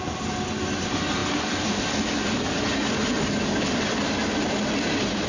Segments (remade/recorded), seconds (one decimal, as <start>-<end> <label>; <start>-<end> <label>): 0.0-5.3 recorded